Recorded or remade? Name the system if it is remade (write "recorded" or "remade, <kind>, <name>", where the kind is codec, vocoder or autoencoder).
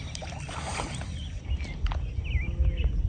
recorded